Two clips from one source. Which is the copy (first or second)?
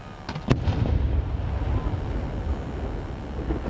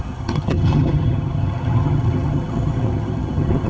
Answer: second